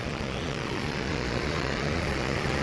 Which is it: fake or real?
fake